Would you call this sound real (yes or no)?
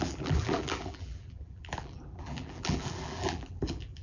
no